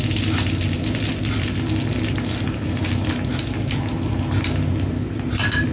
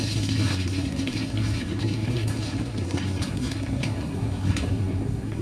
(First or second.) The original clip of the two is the first